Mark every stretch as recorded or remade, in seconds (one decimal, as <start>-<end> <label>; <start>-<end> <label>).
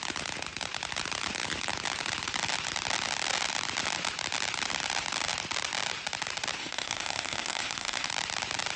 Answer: 0.0-6.6 recorded; 6.6-8.1 remade; 8.1-8.8 recorded